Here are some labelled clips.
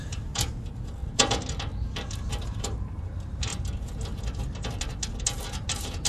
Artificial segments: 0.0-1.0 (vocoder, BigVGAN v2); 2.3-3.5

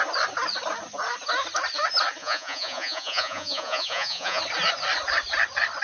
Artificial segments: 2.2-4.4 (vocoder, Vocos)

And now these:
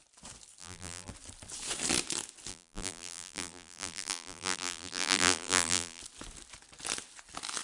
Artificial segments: 0.6-1.1 (vocoder, BigVGAN v2); 2.5-6.0

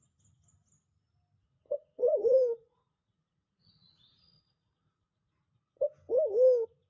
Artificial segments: 1.4-5.5 (vocoder, Vocos)